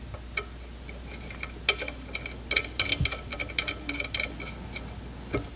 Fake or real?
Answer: real